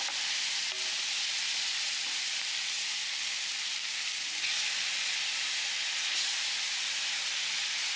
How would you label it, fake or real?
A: real